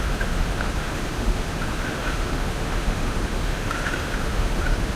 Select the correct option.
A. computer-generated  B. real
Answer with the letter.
A